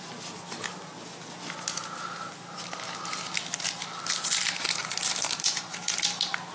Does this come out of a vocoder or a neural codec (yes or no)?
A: no